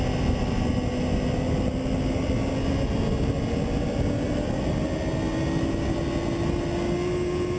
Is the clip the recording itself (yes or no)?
yes